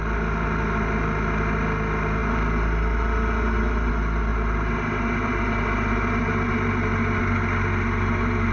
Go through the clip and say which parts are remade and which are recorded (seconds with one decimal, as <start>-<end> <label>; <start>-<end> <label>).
0.0-8.5 recorded